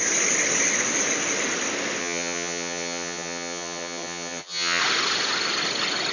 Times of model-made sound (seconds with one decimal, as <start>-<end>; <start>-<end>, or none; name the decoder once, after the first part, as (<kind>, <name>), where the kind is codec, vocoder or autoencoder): 2.0-4.8 (vocoder, HiFi-GAN)